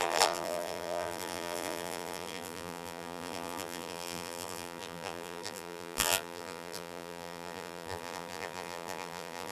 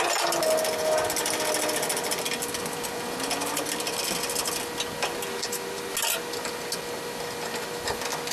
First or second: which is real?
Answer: second